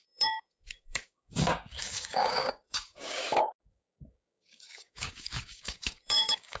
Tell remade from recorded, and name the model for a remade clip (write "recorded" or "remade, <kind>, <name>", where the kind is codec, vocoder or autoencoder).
remade, codec, DAC